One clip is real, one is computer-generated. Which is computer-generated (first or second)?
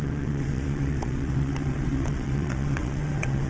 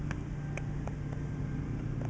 first